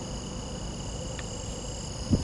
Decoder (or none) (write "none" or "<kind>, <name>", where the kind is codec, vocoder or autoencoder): vocoder, BigVGAN v2